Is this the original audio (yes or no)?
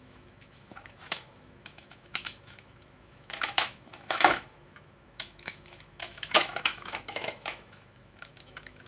no